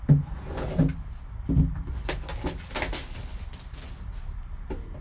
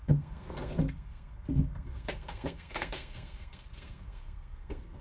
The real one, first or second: first